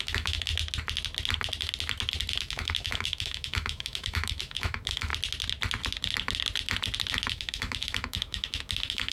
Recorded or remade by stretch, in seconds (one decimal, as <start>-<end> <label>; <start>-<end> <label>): 0.0-0.5 remade; 0.5-2.4 recorded; 2.4-5.1 remade; 5.1-7.3 recorded; 7.3-9.1 remade